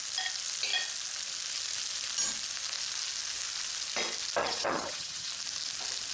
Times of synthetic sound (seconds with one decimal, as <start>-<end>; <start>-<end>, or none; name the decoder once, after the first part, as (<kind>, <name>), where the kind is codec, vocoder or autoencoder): 4.4-5.3 (vocoder, HiFi-GAN)